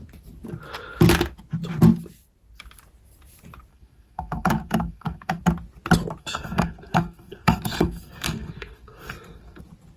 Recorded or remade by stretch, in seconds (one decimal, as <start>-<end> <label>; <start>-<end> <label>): 0.0-3.7 recorded; 3.7-5.4 remade; 5.4-6.2 recorded; 6.2-9.6 remade; 9.6-10.0 recorded